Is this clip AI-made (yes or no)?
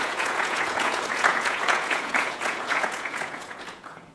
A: yes